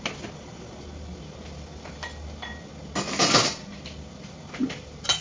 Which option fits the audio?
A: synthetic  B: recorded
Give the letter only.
B